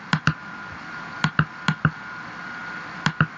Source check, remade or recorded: recorded